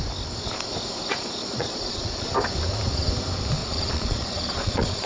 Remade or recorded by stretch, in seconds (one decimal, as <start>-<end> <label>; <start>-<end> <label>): 0.0-1.1 recorded; 1.1-2.2 remade; 2.2-3.6 recorded; 3.6-5.1 remade